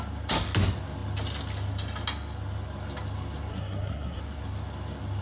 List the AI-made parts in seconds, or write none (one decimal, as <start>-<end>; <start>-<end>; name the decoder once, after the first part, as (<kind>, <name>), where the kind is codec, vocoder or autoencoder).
3.5-4.2 (codec, SNAC)